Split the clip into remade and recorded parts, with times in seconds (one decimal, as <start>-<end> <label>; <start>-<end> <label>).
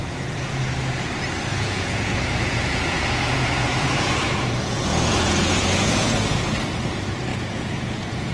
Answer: 0.0-0.6 remade; 0.6-1.5 recorded; 1.5-6.5 remade; 6.5-7.3 recorded; 7.3-8.3 remade